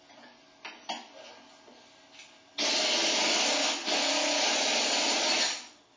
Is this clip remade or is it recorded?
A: recorded